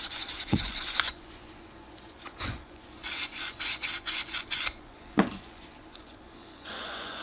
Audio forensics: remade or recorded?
remade